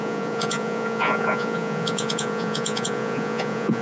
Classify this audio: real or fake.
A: fake